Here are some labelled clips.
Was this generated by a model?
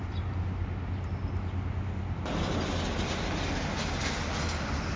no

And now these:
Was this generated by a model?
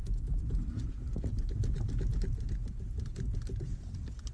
no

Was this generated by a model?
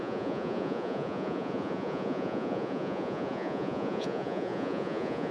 yes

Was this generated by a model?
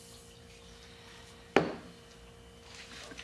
no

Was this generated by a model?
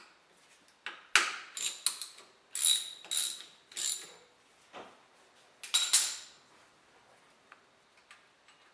no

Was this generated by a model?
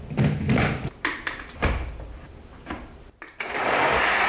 no